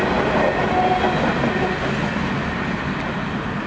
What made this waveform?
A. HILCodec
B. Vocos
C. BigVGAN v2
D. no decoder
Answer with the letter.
D